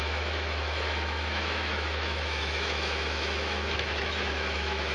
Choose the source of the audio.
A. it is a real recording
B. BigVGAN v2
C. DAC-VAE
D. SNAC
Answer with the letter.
C